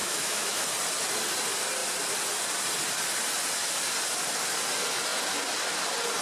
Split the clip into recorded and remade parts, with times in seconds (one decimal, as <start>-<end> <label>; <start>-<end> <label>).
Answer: 0.0-0.7 remade; 0.7-6.2 recorded